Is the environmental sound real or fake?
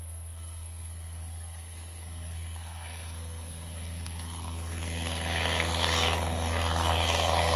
fake